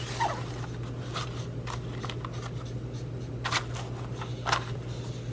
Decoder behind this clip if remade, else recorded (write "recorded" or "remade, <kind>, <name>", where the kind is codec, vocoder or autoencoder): recorded